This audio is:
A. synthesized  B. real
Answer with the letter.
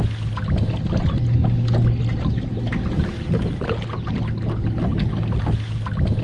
B